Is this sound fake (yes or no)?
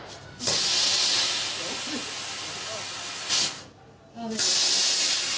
no